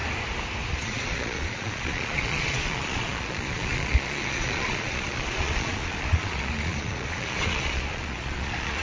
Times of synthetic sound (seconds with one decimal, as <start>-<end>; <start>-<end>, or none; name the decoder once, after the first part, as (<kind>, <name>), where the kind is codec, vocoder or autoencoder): 0.7-8.8 (vocoder, Vocos)